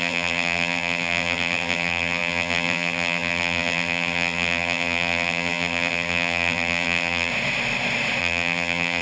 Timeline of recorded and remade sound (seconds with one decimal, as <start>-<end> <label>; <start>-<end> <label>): 0.0-7.3 remade; 7.3-8.2 recorded; 8.2-9.0 remade